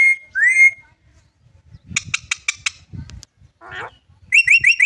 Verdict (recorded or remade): recorded